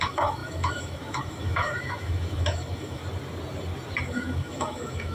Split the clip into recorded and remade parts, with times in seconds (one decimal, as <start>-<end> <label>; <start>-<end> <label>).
0.0-3.0 remade; 3.0-4.0 recorded; 4.0-5.1 remade

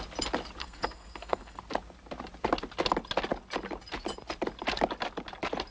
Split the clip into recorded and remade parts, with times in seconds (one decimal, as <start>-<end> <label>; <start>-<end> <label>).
0.0-0.6 recorded; 0.6-1.6 remade; 1.6-5.7 recorded